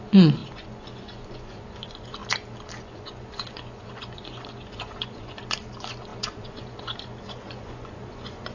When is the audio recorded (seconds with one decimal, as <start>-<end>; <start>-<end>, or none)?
2.2-2.8